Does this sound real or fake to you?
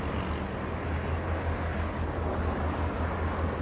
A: real